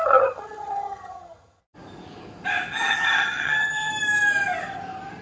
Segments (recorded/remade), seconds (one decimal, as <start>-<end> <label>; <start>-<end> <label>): 0.0-1.6 remade; 1.6-2.7 recorded; 2.7-3.9 remade; 3.9-5.2 recorded